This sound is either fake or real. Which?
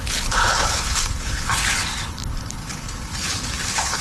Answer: fake